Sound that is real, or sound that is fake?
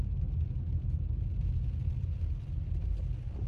real